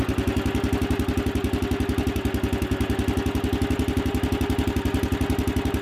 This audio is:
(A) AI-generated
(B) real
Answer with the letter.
B